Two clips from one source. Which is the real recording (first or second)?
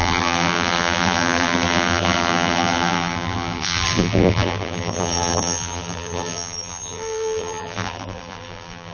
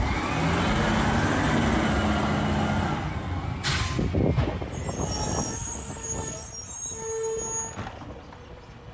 second